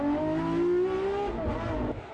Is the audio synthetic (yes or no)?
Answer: no